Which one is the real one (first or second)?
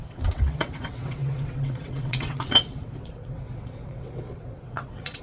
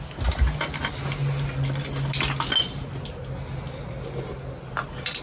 second